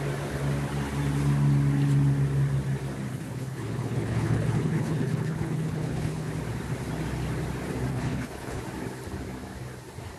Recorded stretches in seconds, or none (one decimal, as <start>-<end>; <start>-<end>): 0.0-3.1; 6.3-7.9; 8.6-10.2